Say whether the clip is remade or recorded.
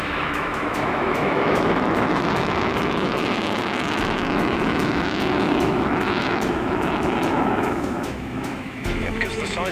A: remade